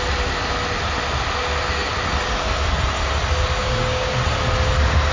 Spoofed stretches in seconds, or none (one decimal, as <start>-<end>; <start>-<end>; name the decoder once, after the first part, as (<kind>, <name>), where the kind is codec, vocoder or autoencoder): 3.6-4.1 (codec, DAC)